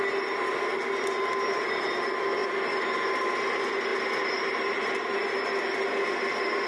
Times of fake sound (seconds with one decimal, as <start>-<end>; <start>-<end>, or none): 2.4-3.2; 3.9-5.2